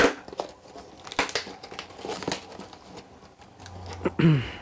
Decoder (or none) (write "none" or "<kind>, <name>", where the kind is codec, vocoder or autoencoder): none